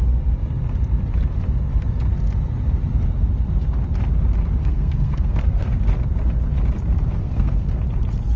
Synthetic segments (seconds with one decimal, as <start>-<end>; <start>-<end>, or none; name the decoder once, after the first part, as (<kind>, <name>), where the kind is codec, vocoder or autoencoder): 4.6-5.8 (codec, SNAC); 7.2-7.8